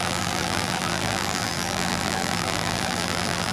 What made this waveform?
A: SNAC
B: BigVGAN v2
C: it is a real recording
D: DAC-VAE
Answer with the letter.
B